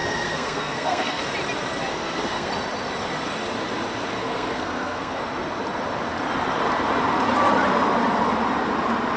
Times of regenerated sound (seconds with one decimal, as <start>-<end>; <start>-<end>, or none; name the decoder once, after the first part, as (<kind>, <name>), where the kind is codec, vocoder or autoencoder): 0.0-1.2 (codec, SNAC); 1.9-2.5; 4.2-5.2